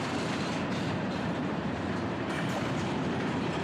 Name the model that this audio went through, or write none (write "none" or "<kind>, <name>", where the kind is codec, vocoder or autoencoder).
vocoder, BigVGAN v2